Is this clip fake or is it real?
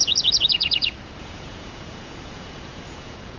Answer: fake